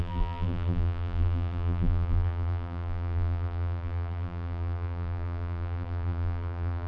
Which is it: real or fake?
fake